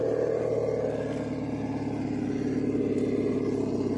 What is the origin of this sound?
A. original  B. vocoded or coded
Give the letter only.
A